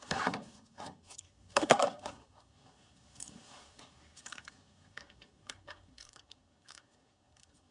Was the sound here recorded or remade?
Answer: remade